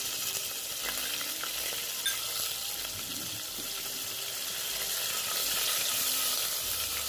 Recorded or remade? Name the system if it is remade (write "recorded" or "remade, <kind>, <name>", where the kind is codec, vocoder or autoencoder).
recorded